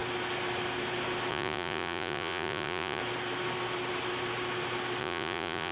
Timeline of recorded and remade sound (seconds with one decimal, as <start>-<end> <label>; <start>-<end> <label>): 0.0-1.3 recorded; 1.3-3.0 remade; 3.0-5.0 recorded; 5.0-5.7 remade